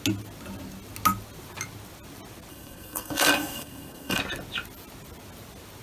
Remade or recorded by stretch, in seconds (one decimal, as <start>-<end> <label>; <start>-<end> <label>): 0.0-2.5 recorded; 2.5-4.2 remade; 4.2-5.8 recorded